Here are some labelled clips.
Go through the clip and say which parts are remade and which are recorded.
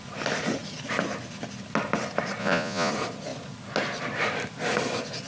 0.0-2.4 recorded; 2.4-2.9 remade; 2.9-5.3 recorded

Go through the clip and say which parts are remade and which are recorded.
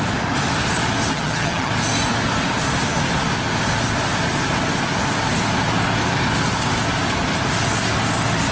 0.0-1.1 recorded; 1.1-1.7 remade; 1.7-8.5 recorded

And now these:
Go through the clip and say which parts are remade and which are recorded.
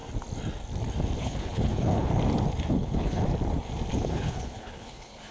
0.0-1.2 recorded; 1.2-2.1 remade; 2.1-2.7 recorded; 2.7-3.2 remade; 3.2-3.9 recorded; 3.9-5.3 remade